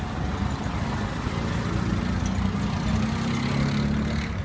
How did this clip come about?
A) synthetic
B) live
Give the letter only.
B